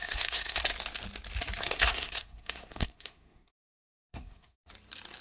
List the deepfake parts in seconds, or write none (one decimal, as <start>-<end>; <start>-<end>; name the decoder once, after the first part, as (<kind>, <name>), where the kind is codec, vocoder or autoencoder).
0.0-0.6 (codec, SNAC); 1.6-4.7

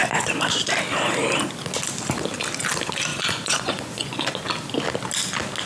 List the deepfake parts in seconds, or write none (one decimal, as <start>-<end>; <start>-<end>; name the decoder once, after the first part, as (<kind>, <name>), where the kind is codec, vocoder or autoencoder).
3.1-4.4 (vocoder, Vocos)